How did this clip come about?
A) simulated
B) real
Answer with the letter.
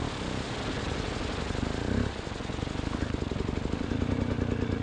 B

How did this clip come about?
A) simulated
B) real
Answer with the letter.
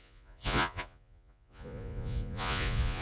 A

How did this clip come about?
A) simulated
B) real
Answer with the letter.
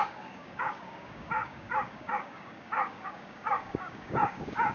A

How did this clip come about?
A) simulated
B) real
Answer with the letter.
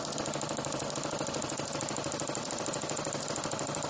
B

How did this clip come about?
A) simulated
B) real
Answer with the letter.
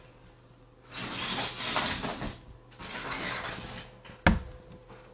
B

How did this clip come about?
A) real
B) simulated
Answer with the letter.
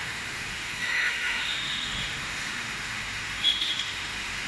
B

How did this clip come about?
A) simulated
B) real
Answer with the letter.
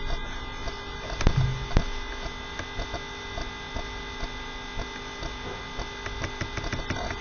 B